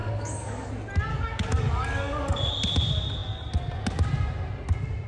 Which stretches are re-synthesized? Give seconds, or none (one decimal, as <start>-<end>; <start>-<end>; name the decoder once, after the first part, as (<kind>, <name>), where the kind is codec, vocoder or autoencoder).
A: 0.0-0.7 (codec, DAC); 1.1-2.5